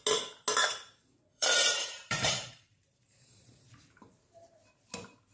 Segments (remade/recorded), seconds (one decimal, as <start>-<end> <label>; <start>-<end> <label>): 0.0-1.3 recorded; 1.3-4.5 remade; 4.5-5.3 recorded